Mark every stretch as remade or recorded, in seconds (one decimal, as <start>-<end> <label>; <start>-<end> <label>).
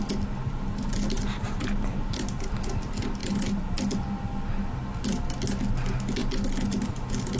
0.0-7.4 recorded